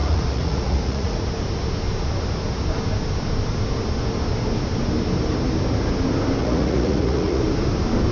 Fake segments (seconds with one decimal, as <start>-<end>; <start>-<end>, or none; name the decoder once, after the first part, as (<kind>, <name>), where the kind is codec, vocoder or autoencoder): 0.0-1.2 (vocoder, Vocos); 6.4-7.4